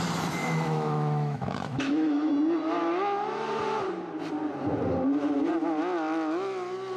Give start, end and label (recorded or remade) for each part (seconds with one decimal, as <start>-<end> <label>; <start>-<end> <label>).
0.0-0.4 recorded; 0.4-2.3 remade; 2.3-7.0 recorded